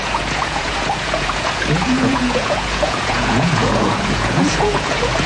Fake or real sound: fake